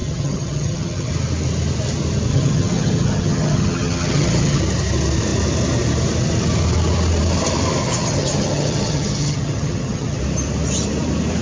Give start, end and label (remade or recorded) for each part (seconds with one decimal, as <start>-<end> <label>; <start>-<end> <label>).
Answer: 0.0-1.1 remade; 1.1-2.3 recorded; 2.3-4.6 remade; 4.6-7.8 recorded; 7.8-10.2 remade; 10.2-11.4 recorded